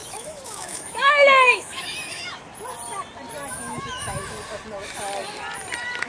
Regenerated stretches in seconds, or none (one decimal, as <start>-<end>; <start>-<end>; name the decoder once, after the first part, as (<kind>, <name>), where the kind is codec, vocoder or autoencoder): 0.0-2.4 (autoencoder, DAC-VAE); 3.5-4.2